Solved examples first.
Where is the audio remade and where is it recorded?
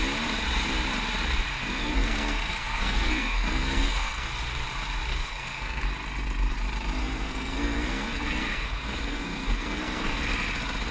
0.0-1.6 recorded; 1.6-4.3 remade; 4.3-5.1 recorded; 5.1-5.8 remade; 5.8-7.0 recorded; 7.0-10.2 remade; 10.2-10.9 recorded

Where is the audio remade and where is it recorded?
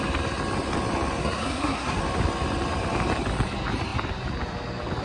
0.0-1.2 recorded; 1.2-2.0 remade; 2.0-5.0 recorded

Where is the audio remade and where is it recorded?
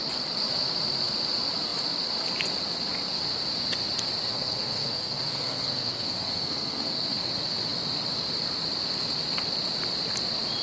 0.0-4.3 recorded; 4.3-7.3 remade; 7.3-10.6 recorded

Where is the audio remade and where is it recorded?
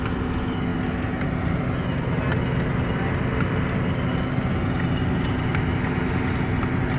0.0-7.0 recorded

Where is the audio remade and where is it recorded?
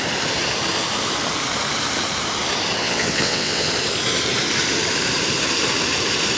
0.0-2.8 recorded; 2.8-3.7 remade; 3.7-6.4 recorded